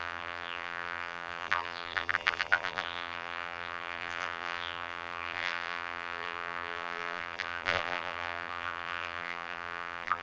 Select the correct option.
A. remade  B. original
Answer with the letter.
A